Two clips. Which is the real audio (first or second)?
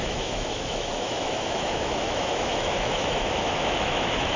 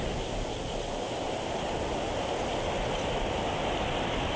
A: second